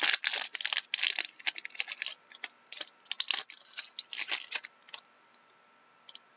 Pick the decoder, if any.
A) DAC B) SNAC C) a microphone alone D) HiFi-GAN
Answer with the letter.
C